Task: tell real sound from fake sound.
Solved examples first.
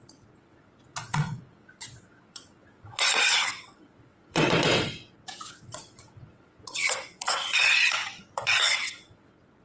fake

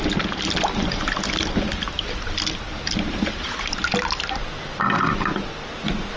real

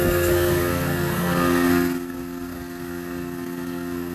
fake